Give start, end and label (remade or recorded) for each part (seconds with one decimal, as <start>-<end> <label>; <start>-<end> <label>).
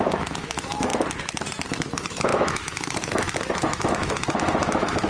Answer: 0.0-0.9 remade; 0.9-1.7 recorded; 1.7-5.1 remade